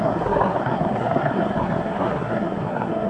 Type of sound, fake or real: fake